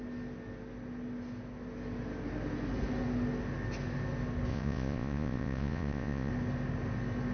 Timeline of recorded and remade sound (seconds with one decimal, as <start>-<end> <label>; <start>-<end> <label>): 0.0-4.5 recorded; 4.5-6.3 remade; 6.3-7.3 recorded